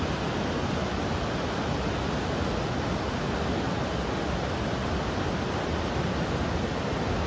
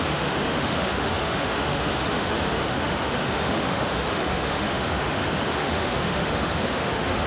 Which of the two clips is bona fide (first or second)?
first